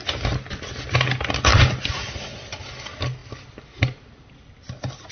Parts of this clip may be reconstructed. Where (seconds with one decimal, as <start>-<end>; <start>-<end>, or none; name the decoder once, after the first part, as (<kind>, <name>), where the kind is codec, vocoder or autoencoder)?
none